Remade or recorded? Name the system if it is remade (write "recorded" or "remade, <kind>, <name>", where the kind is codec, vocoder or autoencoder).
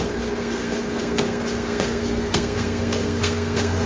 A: remade, codec, SNAC